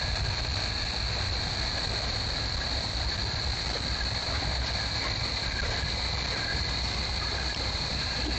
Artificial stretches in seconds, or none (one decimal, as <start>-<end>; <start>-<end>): 6.5-8.4